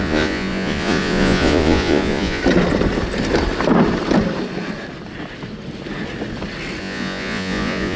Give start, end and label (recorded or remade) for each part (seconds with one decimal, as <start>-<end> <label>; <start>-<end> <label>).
0.0-2.4 remade; 2.4-6.8 recorded; 6.8-8.0 remade